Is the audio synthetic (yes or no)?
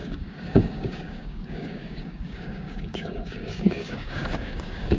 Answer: yes